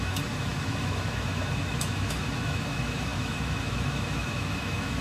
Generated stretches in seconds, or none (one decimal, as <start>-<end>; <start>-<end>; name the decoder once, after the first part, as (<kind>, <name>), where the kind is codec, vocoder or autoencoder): 0.0-5.0 (autoencoder, DAC-VAE)